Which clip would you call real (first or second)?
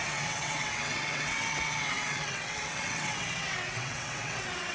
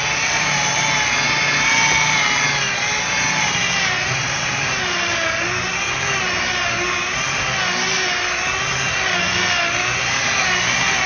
second